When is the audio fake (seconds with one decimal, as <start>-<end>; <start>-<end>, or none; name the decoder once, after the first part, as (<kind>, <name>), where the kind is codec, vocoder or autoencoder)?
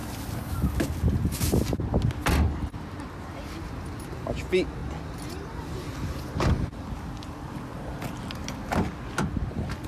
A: none